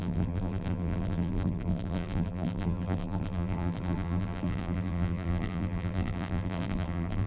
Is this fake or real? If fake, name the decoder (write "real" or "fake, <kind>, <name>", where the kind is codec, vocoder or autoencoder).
fake, vocoder, BigVGAN v2